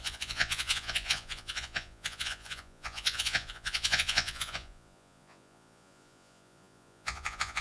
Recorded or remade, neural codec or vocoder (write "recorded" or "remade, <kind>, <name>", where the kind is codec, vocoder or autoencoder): remade, vocoder, Vocos